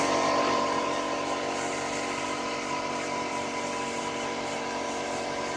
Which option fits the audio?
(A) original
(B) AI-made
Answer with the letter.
B